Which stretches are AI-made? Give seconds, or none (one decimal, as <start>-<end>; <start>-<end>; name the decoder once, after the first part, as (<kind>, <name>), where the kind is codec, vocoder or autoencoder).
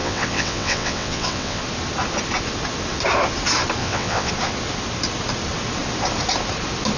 0.0-1.6 (vocoder, WaveNeXt); 3.8-4.3